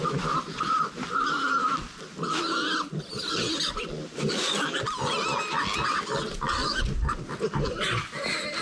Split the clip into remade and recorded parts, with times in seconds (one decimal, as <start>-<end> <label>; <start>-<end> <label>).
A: 0.0-8.6 recorded